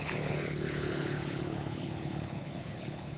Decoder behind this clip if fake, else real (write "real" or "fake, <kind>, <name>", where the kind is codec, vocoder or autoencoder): fake, codec, HILCodec